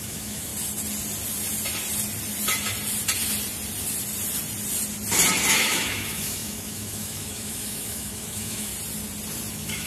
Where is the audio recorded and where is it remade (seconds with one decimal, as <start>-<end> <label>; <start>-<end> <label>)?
0.0-0.5 remade; 0.5-5.5 recorded; 5.5-8.7 remade; 8.7-9.5 recorded; 9.5-9.9 remade